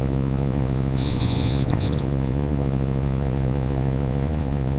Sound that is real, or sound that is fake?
fake